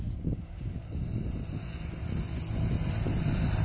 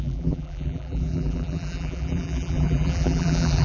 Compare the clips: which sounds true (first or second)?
first